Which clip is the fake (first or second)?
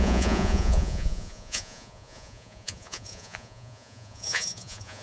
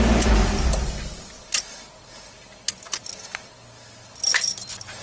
first